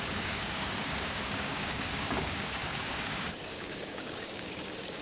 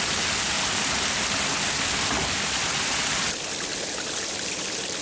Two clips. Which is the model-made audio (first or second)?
first